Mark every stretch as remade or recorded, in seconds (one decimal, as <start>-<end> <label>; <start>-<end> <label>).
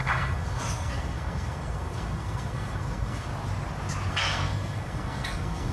0.0-3.3 remade; 3.3-4.1 recorded; 4.1-5.7 remade